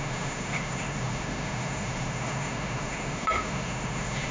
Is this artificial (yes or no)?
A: yes